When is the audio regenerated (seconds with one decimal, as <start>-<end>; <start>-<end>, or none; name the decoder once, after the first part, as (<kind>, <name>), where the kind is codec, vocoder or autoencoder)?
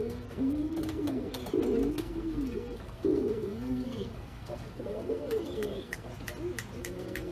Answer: 0.0-1.4 (codec, SNAC); 1.9-6.1; 6.8-7.3